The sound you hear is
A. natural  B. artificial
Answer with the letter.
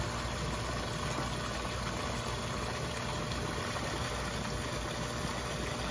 A